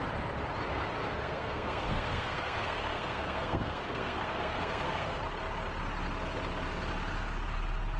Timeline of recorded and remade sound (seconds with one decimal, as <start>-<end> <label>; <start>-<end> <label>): 0.0-1.0 recorded; 1.0-5.2 remade; 5.2-8.0 recorded